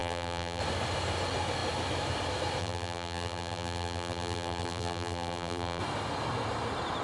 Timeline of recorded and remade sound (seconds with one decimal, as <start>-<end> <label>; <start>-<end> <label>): 0.0-0.6 remade; 0.6-2.6 recorded; 2.6-5.8 remade; 5.8-7.0 recorded